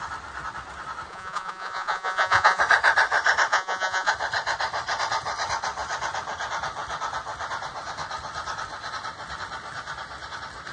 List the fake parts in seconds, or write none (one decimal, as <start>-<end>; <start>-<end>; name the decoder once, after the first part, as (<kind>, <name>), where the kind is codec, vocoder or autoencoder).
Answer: 1.1-2.6 (vocoder, Vocos); 3.5-4.1